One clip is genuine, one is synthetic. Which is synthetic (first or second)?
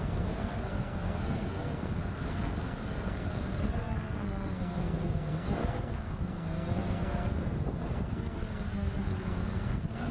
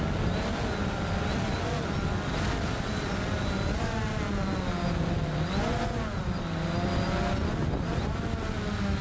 first